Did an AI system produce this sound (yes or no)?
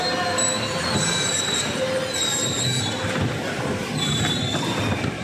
no